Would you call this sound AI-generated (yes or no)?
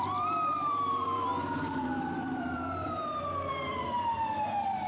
yes